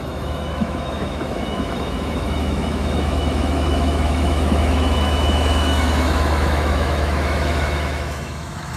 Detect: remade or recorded remade